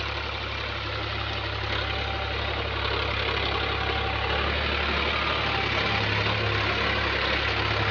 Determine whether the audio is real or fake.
real